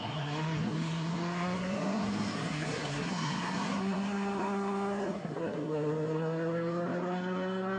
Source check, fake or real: fake